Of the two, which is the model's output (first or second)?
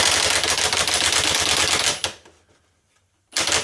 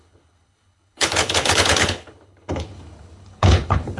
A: second